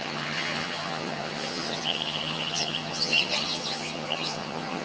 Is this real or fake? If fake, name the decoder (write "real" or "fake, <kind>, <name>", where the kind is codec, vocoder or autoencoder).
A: fake, vocoder, HiFi-GAN